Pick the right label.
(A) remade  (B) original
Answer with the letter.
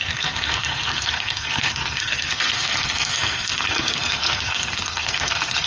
A